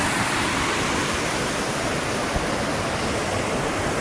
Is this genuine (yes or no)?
yes